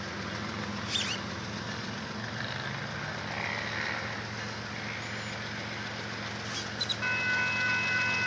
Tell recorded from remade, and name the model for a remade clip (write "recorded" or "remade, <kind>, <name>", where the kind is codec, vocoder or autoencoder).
recorded